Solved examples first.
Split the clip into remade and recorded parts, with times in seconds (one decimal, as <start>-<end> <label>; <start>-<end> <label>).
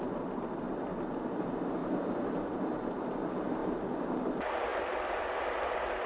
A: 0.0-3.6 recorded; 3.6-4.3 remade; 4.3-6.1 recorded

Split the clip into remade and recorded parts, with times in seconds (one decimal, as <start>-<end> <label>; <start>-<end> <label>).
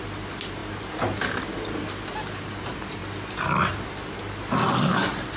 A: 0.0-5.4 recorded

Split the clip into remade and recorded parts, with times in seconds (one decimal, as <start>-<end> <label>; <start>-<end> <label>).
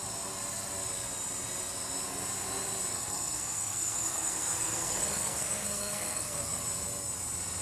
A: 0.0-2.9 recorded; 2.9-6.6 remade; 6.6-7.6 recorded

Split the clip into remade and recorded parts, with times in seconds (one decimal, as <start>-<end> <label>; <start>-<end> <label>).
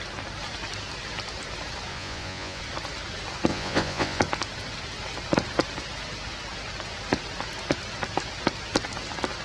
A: 0.0-1.9 recorded; 1.9-2.6 remade; 2.6-3.5 recorded; 3.5-4.2 remade; 4.2-9.4 recorded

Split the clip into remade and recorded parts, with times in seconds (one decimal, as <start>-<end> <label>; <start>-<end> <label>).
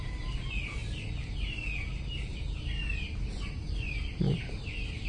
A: 0.0-5.1 recorded